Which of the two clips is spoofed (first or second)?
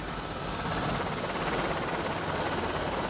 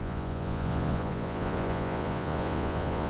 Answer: second